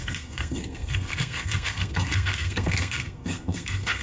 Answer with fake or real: fake